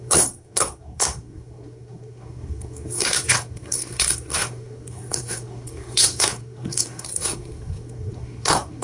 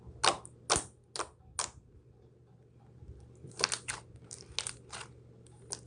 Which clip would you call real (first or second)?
second